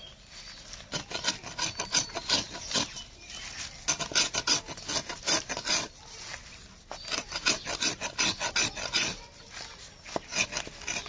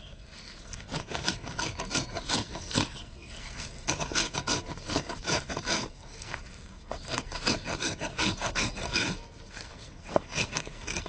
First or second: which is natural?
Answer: first